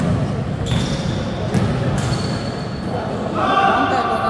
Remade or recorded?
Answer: recorded